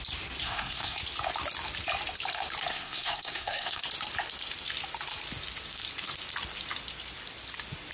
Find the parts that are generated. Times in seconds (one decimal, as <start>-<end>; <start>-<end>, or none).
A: 0.4-1.0; 2.7-3.8

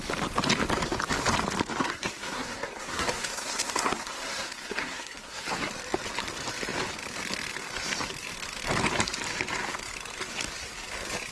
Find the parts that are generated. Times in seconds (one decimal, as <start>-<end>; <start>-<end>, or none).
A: 1.8-5.7

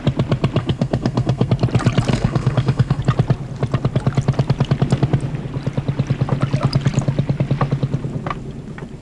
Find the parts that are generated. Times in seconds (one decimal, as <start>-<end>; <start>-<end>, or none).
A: 0.6-1.5; 2.1-3.0

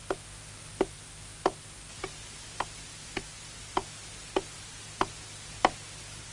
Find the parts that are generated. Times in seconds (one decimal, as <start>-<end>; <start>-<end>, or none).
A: none

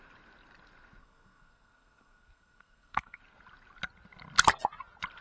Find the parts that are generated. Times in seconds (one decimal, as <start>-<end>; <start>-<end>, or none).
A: 1.0-3.2

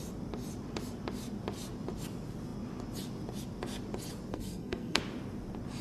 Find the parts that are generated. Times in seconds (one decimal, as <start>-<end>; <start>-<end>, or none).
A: 4.3-5.0

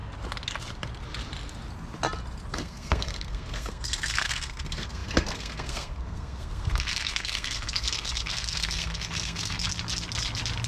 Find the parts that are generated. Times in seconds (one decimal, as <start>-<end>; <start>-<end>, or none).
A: 2.5-9.7